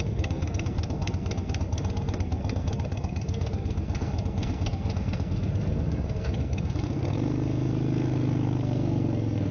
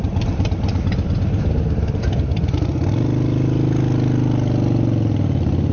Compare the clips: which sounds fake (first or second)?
first